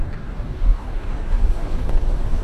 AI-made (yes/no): yes